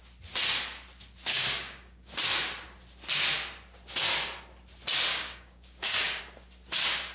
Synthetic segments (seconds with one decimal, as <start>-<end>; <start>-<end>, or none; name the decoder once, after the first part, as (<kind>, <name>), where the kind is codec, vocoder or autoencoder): 1.3-2.1 (codec, DAC); 5.1-6.2